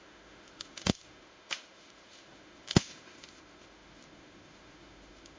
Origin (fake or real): fake